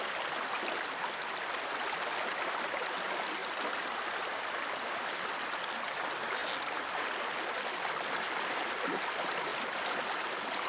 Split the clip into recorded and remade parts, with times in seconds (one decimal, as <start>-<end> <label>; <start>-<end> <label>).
0.0-10.7 recorded